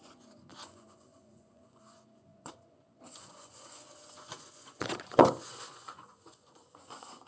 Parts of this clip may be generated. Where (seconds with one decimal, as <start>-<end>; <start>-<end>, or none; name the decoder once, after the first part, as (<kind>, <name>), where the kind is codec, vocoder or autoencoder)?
0.0-7.3 (vocoder, Vocos)